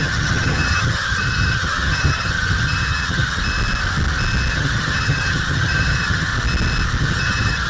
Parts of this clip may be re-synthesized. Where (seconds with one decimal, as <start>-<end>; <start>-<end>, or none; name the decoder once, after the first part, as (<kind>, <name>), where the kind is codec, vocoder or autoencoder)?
0.0-3.4 (vocoder, HiFi-GAN); 4.5-6.3; 7.0-7.7